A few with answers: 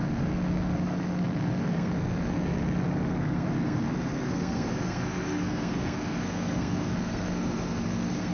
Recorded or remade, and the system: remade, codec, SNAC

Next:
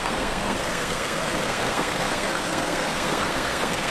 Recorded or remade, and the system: remade, codec, SNAC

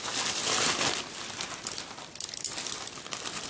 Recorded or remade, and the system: recorded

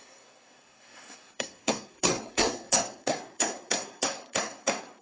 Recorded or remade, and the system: remade, codec, SNAC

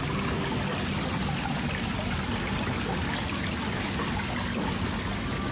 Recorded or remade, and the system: recorded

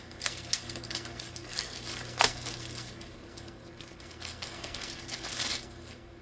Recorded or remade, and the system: remade, codec, SNAC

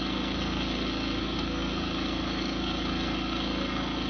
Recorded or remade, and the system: remade, codec, SNAC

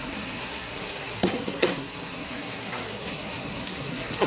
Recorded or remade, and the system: remade, codec, SNAC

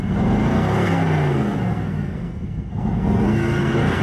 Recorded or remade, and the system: remade, codec, SNAC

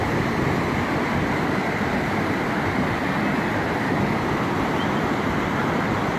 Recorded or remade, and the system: recorded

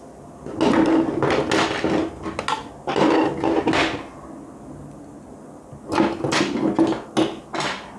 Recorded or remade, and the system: recorded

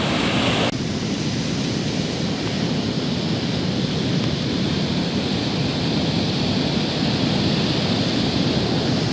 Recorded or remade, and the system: recorded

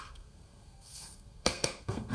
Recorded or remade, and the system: remade, codec, SNAC